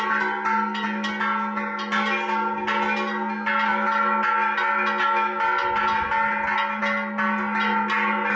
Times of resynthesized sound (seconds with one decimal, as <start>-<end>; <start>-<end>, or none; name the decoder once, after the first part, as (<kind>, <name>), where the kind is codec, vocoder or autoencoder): none